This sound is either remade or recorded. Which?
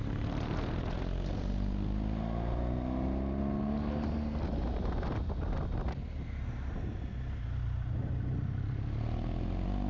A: recorded